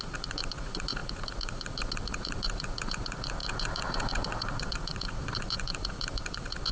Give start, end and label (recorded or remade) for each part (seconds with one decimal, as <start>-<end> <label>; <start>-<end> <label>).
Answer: 0.0-6.7 remade